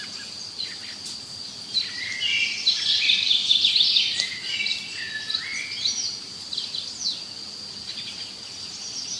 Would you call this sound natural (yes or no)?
yes